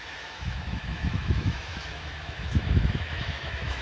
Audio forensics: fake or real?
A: fake